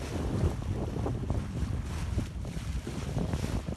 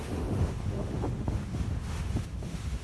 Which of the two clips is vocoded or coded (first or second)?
second